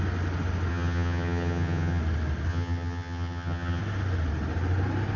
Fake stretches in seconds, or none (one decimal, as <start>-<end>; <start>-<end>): 0.7-2.0; 2.5-3.8